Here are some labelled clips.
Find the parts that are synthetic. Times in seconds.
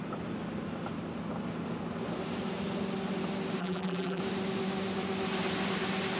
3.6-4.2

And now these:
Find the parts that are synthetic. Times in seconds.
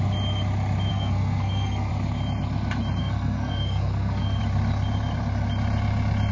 0.9-1.9; 3.0-4.4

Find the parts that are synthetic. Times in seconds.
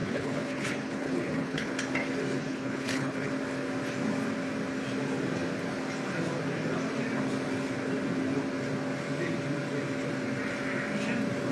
0.0-1.7; 2.4-3.3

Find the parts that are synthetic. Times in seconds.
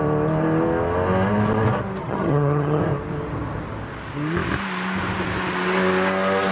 2.0-2.8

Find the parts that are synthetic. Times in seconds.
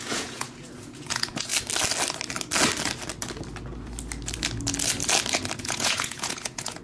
0.0-1.5; 5.6-6.8